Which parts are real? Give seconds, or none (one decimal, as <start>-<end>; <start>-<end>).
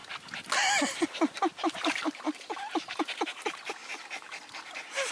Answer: 0.0-5.1